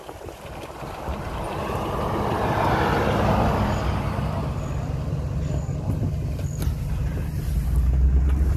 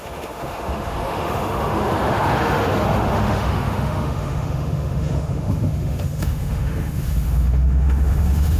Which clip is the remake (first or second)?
second